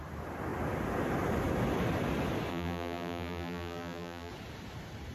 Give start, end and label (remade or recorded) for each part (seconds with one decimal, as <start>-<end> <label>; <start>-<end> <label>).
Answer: 0.0-2.5 recorded; 2.5-4.3 remade; 4.3-5.1 recorded